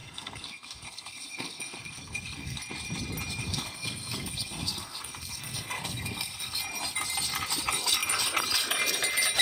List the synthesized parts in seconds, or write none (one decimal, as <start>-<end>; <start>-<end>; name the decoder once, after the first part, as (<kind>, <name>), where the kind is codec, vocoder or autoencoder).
0.0-2.6 (codec, SNAC); 3.4-6.6